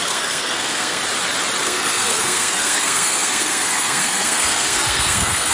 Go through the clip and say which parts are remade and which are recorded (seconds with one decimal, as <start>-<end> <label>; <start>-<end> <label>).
0.0-1.0 remade; 1.0-1.6 recorded; 1.6-5.5 remade